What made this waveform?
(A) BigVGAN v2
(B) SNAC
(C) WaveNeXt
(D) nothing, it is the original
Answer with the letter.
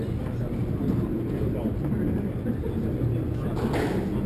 D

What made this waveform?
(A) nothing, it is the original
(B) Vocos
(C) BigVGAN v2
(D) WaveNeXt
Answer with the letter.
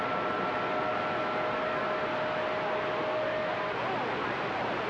A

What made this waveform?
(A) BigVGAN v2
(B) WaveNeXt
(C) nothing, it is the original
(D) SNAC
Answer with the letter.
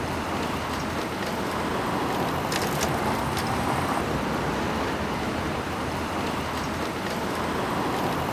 C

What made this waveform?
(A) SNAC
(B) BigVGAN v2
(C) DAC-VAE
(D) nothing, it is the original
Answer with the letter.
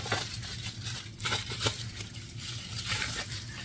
B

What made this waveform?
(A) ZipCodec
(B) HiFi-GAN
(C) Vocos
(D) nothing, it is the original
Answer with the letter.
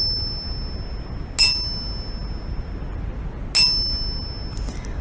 D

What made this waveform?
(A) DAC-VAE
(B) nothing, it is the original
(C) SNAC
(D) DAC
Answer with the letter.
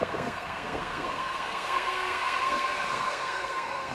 C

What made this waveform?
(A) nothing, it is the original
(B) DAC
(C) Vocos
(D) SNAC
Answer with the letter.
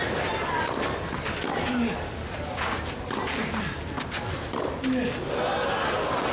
A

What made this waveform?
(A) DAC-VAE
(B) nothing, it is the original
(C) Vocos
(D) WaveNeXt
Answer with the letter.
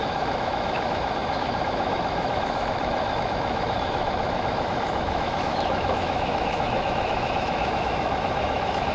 A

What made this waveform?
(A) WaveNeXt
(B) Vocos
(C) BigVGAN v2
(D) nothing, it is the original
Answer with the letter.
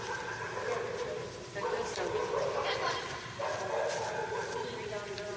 D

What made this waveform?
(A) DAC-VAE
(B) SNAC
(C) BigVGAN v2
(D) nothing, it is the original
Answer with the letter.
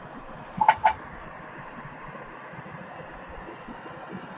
C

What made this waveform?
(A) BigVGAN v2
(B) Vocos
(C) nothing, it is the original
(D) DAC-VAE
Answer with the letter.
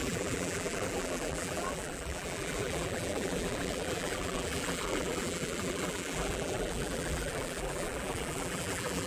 A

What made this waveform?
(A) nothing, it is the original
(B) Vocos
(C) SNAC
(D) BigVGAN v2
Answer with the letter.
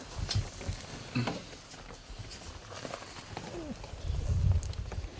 A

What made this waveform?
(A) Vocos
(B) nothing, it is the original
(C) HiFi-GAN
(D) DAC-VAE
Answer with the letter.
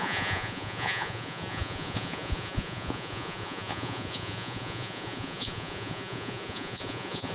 A